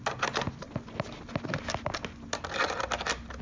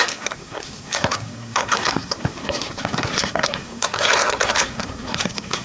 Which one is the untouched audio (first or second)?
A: first